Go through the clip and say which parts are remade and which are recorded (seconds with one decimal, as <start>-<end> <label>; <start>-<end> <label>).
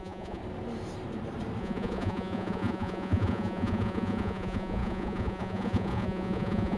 0.0-0.4 remade; 0.4-1.6 recorded; 1.6-6.8 remade